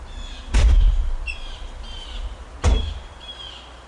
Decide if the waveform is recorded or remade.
remade